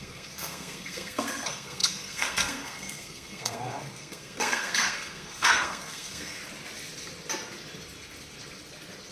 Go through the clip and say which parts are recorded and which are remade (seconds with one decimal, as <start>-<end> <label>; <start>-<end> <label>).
0.0-6.4 remade; 6.4-9.1 recorded